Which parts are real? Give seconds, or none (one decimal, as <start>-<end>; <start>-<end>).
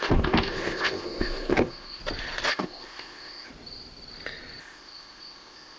2.0-2.5; 3.5-4.6